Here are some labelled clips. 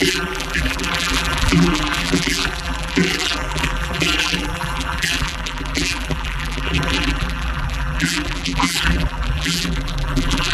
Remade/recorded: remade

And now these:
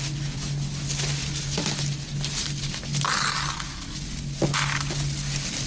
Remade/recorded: recorded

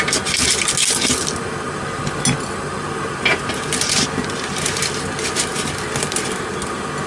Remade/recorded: recorded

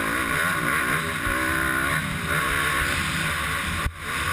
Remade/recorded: recorded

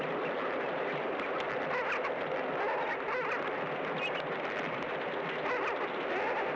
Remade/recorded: recorded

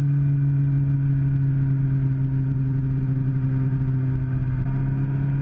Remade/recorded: recorded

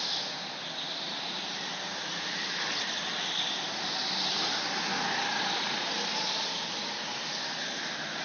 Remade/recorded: recorded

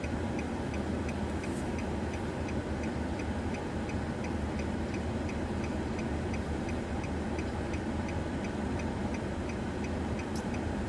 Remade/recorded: recorded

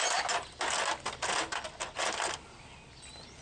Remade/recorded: recorded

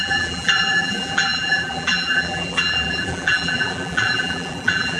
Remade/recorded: remade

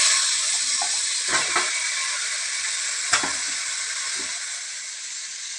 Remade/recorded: remade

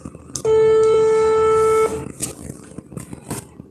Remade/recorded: recorded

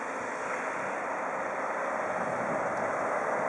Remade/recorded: recorded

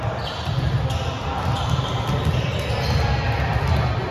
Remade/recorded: recorded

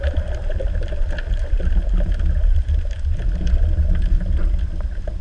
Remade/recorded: recorded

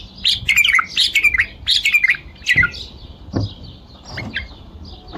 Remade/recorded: recorded